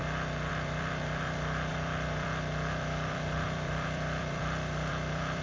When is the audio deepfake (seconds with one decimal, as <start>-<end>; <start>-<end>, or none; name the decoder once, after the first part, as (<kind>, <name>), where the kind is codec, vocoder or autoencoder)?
0.5-5.4 (vocoder, BigVGAN v2)